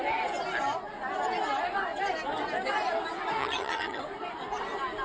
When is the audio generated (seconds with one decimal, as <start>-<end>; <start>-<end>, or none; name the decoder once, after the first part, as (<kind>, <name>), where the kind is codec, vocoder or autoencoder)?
3.4-4.0 (vocoder, HiFi-GAN)